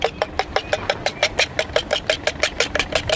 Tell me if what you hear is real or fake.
real